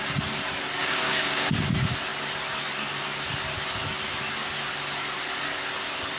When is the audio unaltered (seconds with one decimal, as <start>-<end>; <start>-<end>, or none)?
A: 0.0-0.8; 1.5-6.2